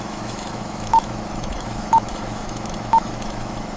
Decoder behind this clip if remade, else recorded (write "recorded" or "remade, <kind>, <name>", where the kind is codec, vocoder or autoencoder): remade, autoencoder, DAC-VAE